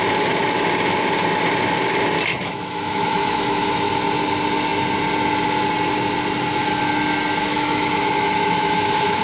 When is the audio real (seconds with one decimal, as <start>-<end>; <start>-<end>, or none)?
0.0-2.3; 3.9-7.5